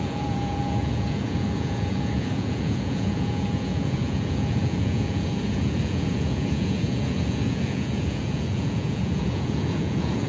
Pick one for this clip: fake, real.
fake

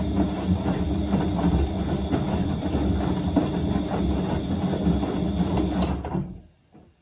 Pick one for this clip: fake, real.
real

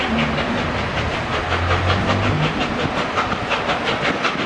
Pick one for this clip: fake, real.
real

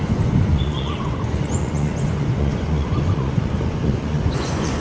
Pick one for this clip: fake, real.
fake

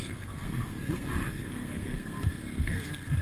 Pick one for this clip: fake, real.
fake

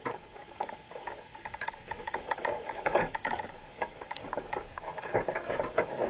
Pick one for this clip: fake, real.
fake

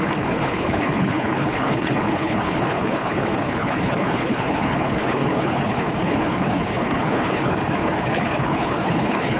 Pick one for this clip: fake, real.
fake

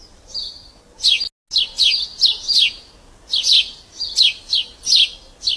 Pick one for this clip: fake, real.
real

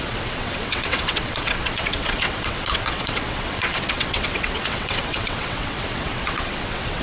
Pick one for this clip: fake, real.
fake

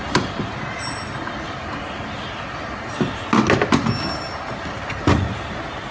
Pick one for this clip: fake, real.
real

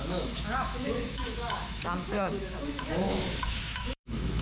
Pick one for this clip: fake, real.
fake